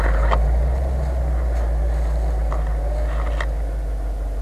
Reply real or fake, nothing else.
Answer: real